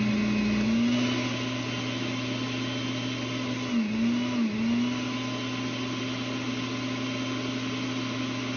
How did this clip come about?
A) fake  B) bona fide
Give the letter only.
B